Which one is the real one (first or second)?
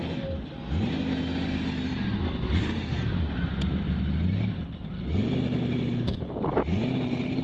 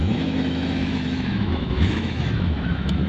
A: first